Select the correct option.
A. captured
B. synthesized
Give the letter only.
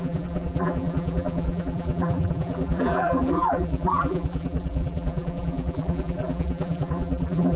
B